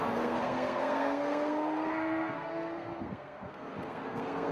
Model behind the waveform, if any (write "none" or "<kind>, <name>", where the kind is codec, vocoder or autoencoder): codec, SNAC